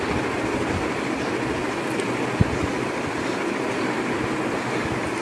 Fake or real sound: real